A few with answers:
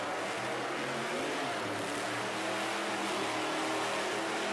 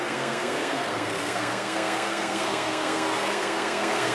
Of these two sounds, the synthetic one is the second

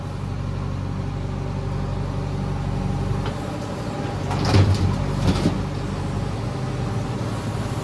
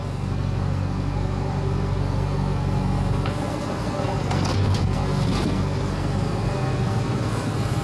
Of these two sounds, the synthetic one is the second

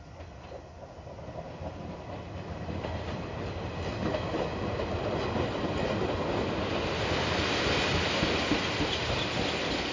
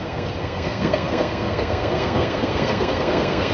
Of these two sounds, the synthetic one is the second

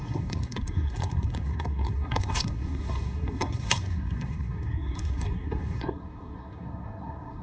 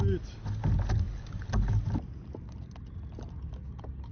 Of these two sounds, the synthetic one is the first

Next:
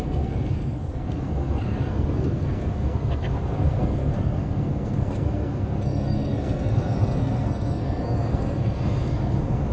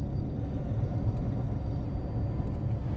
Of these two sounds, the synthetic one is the first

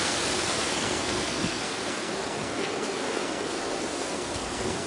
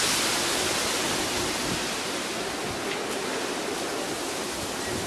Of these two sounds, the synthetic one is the first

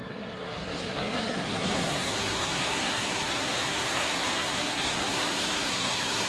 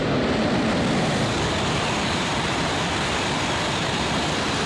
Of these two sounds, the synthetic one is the first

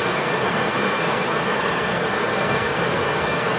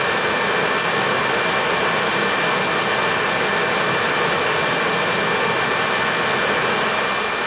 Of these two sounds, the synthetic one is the first